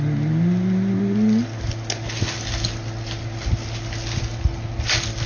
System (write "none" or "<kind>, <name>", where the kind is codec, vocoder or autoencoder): none